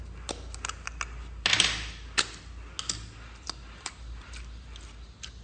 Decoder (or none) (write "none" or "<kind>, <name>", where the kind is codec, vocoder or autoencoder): none